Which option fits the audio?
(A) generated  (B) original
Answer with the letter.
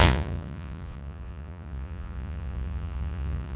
A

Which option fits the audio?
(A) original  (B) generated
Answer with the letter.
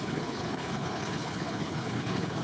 B